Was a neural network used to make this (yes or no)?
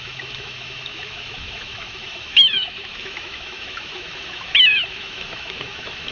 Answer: yes